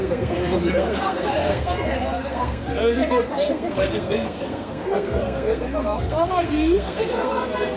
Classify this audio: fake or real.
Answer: fake